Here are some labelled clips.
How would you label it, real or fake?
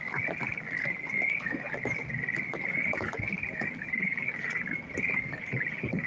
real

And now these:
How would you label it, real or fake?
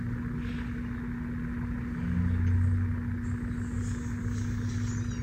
real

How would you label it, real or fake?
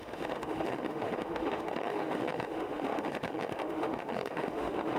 fake